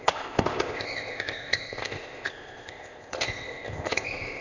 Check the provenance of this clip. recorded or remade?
remade